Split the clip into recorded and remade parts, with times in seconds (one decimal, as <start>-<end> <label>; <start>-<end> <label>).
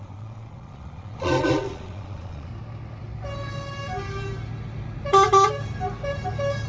0.0-2.5 remade; 2.5-6.7 recorded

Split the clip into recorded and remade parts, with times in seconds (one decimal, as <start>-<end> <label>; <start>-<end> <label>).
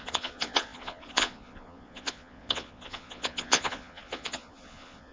0.0-5.1 remade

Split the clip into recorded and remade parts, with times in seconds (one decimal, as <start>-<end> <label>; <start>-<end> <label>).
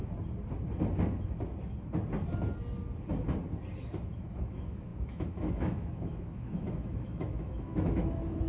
0.0-4.2 recorded; 4.2-8.5 remade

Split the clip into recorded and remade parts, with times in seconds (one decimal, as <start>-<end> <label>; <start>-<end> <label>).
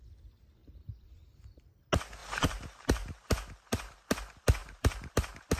0.0-0.6 recorded; 0.6-1.1 remade; 1.1-2.2 recorded; 2.2-3.3 remade; 3.3-4.6 recorded; 4.6-5.1 remade; 5.1-5.6 recorded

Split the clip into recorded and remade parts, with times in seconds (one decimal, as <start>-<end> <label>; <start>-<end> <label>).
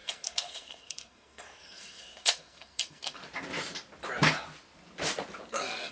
0.0-3.2 remade; 3.2-5.5 recorded; 5.5-5.9 remade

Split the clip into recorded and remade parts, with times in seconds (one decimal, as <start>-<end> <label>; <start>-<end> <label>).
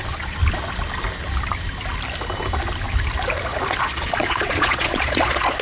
0.0-0.4 remade; 0.4-3.8 recorded; 3.8-5.6 remade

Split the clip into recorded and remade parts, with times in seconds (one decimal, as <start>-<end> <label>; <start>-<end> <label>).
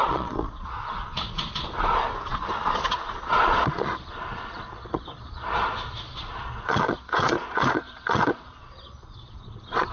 0.0-9.9 remade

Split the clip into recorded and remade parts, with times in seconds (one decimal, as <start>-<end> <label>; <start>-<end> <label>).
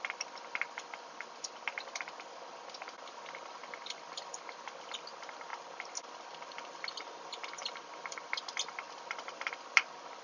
0.0-10.2 recorded